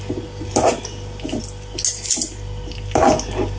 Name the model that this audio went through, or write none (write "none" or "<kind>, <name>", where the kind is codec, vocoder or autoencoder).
none